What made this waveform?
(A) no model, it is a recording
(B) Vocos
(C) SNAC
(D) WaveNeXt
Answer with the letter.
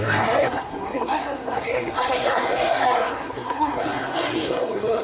C